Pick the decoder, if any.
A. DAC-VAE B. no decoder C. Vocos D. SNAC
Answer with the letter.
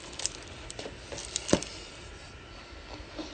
B